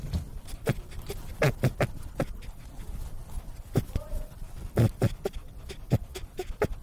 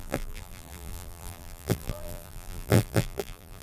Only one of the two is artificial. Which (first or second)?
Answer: second